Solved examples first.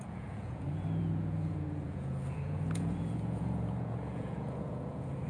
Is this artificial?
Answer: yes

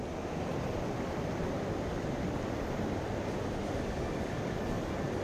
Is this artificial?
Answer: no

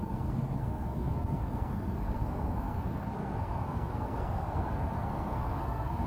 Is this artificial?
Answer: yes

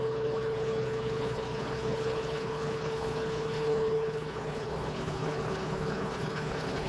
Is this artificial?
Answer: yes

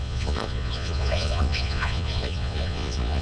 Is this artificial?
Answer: yes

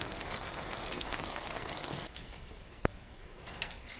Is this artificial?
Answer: yes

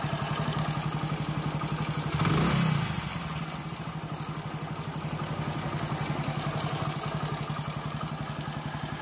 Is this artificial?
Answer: no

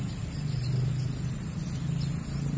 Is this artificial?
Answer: no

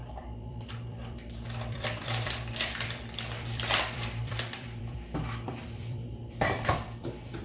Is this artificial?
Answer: yes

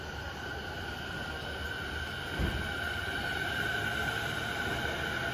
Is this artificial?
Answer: no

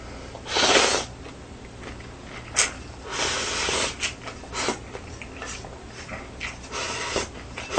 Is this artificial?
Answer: no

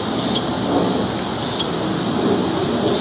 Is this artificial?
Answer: no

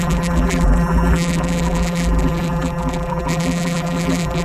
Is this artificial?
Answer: yes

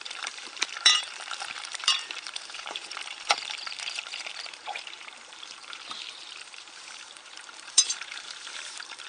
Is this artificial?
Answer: yes